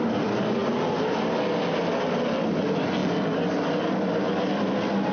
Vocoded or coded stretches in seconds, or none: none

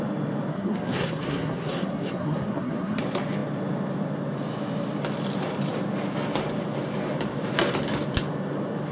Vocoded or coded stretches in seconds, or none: 0.5-3.0 (codec, SNAC)

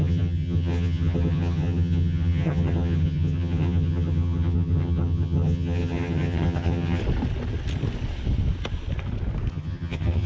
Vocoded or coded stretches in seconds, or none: 0.0-7.0 (vocoder, HiFi-GAN); 9.5-10.3

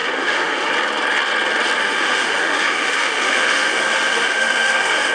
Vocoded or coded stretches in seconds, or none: 0.0-0.7 (autoencoder, DAC-VAE); 1.8-5.1

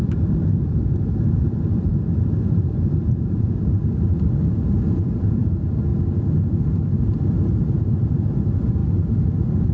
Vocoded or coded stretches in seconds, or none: 0.0-5.9 (vocoder, BigVGAN v2); 6.6-9.7

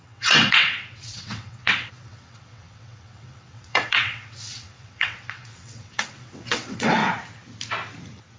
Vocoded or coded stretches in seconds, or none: 0.0-7.0 (vocoder, WaveNeXt)

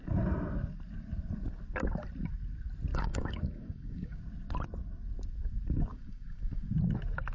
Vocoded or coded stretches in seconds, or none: 2.9-4.2 (codec, DAC); 5.9-6.7